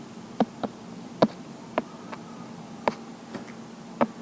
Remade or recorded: recorded